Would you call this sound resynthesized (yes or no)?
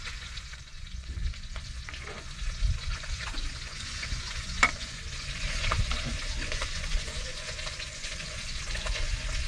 yes